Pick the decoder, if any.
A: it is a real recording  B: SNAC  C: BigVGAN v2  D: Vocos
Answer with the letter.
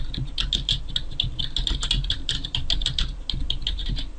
A